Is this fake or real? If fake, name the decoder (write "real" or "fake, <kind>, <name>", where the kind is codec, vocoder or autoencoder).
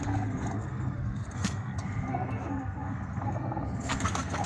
fake, codec, SNAC